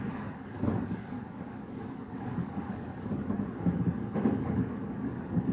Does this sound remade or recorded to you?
remade